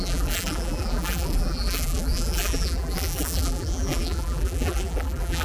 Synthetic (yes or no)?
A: yes